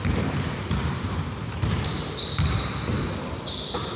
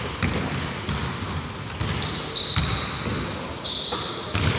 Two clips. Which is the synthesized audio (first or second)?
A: first